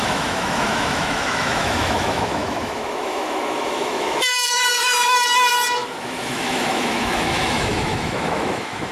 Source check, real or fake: fake